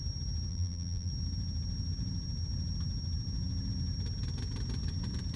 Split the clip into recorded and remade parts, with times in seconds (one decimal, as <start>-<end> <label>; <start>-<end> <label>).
0.0-0.5 recorded; 0.5-1.1 remade; 1.1-5.4 recorded